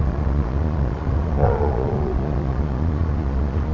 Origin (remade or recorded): remade